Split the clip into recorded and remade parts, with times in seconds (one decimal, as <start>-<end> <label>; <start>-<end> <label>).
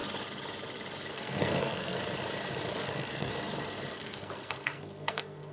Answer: 0.0-1.1 recorded; 1.1-2.0 remade; 2.0-2.7 recorded; 2.7-3.3 remade; 3.3-3.9 recorded; 3.9-5.5 remade